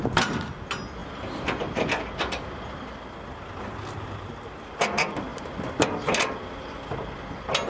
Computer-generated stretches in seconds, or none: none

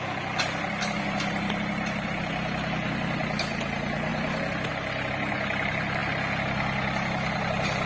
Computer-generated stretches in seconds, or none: none

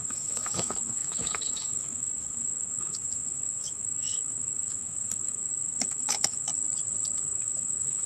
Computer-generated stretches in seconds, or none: 0.0-6.5 (autoencoder, DAC-VAE); 7.2-8.1

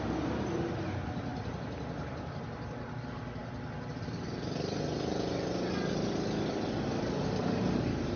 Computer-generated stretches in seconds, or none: 1.3-2.4 (vocoder, BigVGAN v2)

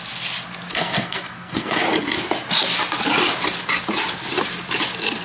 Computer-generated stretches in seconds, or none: 0.7-1.8 (codec, SNAC)

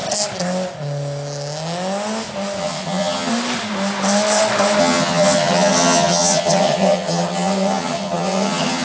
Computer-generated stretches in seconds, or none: 2.6-3.3 (vocoder, HiFi-GAN); 4.8-8.8

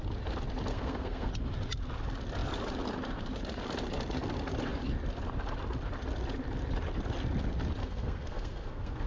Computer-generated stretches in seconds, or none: 0.7-1.3 (codec, SNAC); 7.8-9.1

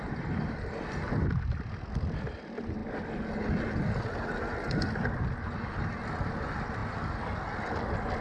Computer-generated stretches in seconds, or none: none